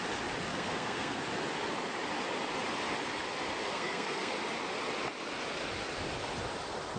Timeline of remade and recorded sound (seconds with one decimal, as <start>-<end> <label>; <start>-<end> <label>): 0.0-0.5 recorded; 0.5-1.2 remade; 1.2-3.6 recorded; 3.6-4.3 remade; 4.3-7.0 recorded